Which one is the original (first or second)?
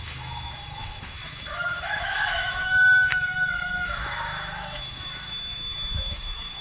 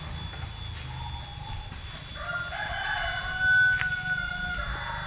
second